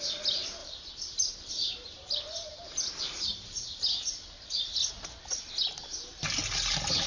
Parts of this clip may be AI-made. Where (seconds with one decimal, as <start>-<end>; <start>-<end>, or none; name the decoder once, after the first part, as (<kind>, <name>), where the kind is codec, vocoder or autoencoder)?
0.6-4.9 (vocoder, BigVGAN v2)